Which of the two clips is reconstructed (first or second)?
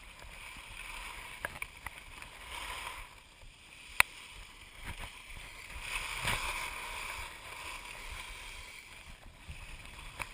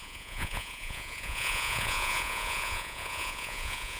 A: second